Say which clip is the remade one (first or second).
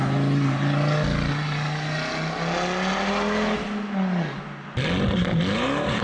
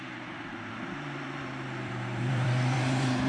second